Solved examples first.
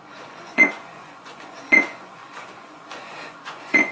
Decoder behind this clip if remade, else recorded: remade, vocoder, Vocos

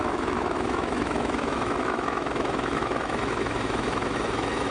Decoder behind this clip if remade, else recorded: remade, autoencoder, DAC-VAE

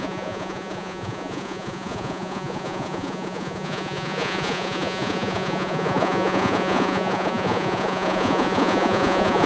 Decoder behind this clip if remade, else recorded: remade, vocoder, Vocos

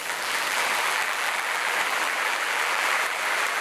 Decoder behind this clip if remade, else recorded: remade, vocoder, BigVGAN v2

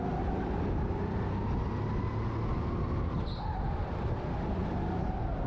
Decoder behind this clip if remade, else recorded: recorded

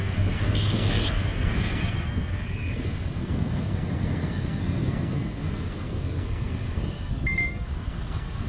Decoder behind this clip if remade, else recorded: remade, codec, SNAC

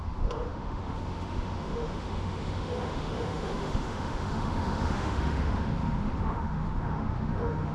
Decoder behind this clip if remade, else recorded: remade, autoencoder, DAC-VAE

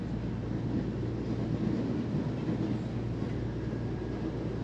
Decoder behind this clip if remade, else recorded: recorded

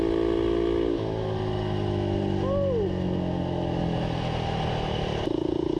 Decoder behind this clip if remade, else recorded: recorded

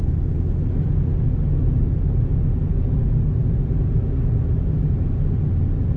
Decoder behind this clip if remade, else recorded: recorded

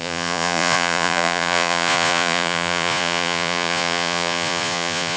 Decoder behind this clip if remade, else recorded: remade, vocoder, Vocos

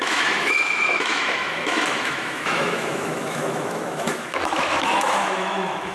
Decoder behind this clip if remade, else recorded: remade, autoencoder, DAC-VAE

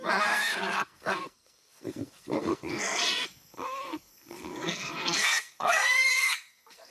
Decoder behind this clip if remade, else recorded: remade, codec, SNAC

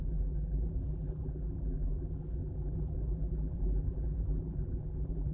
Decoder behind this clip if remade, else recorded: remade, vocoder, BigVGAN v2